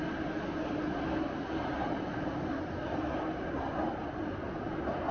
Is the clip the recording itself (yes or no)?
yes